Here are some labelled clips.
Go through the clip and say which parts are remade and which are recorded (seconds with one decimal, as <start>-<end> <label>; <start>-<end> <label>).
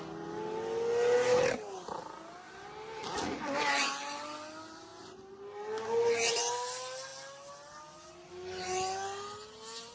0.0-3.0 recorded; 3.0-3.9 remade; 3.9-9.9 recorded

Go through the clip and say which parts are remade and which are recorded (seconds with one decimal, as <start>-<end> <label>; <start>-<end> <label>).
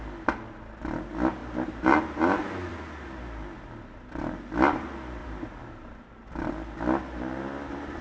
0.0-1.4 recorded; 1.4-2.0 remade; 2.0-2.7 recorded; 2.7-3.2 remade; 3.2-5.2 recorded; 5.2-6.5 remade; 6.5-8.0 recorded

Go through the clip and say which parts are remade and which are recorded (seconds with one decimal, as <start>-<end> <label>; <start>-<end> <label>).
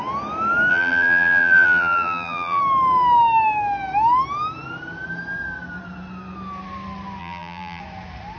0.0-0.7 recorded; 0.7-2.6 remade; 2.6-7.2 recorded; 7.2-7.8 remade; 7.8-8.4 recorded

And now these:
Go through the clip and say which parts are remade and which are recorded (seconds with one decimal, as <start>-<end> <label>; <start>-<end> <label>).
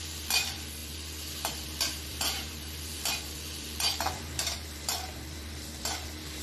0.0-6.4 remade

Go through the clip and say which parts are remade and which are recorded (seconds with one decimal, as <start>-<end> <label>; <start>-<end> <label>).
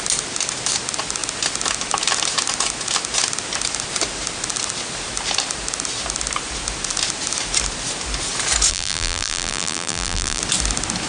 0.0-8.7 recorded; 8.7-10.4 remade; 10.4-11.1 recorded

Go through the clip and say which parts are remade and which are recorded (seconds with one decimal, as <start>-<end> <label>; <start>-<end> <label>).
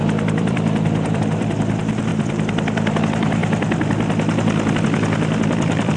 0.0-3.4 remade; 3.4-4.8 recorded; 4.8-6.0 remade